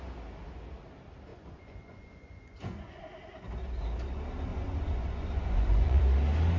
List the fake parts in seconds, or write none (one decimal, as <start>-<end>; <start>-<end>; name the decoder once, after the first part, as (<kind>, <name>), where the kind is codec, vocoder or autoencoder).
1.3-3.0 (vocoder, Vocos); 4.5-6.0